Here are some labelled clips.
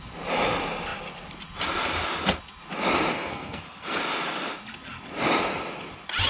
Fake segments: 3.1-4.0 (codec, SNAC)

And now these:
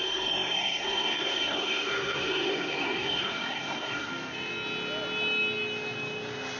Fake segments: 0.0-4.1 (codec, SNAC)

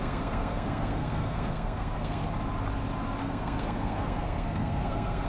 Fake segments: 0.0-2.2 (codec, SNAC); 3.2-5.3

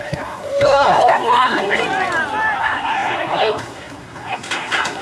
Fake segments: 0.0-1.8 (codec, SNAC); 2.6-5.0

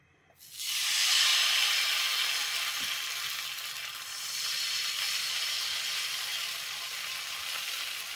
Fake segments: none

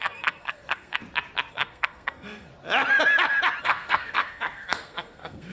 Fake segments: 0.0-1.0 (codec, SNAC); 1.5-2.5; 3.6-5.5